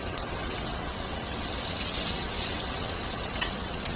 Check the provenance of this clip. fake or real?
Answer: fake